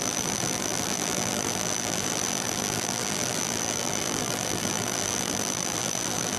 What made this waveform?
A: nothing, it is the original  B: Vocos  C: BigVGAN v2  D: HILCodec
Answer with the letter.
C